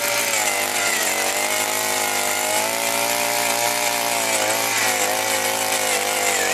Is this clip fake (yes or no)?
no